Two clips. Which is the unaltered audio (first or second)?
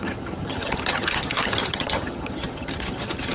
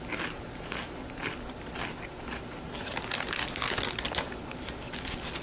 second